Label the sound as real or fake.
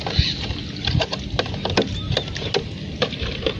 real